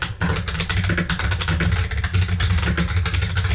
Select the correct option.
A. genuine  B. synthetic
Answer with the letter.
A